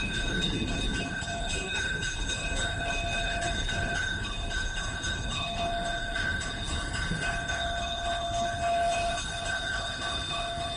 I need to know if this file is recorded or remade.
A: remade